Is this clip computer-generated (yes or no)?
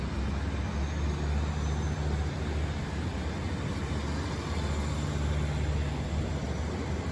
no